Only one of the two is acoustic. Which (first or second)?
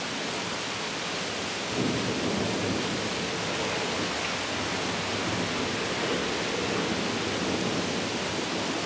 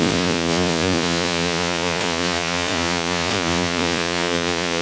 first